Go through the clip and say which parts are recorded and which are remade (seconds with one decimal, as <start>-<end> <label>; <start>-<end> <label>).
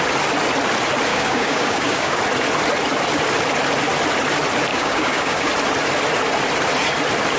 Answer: 0.0-1.1 recorded; 1.1-2.2 remade; 2.2-4.7 recorded; 4.7-5.5 remade; 5.5-7.4 recorded